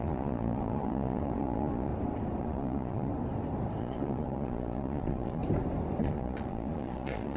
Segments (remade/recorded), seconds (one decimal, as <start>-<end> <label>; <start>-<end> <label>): 0.0-1.9 remade; 1.9-2.4 recorded; 2.4-3.1 remade; 3.1-3.8 recorded; 3.8-5.4 remade; 5.4-6.0 recorded; 6.0-7.4 remade